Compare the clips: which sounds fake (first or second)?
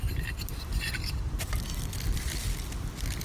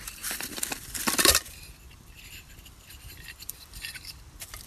second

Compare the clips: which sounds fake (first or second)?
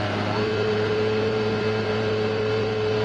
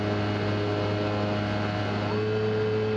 first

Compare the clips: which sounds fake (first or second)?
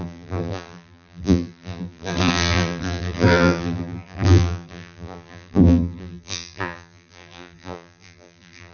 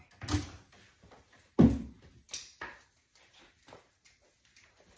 first